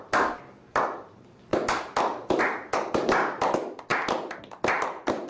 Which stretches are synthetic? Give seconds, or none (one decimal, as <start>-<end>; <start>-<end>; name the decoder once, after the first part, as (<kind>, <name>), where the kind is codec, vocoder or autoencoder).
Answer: none